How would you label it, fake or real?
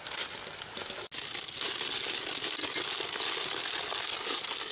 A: real